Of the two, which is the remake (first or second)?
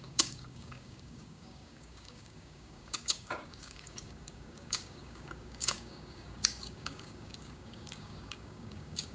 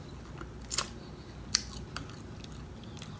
first